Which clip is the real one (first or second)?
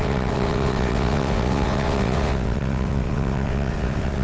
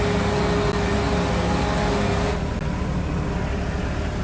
second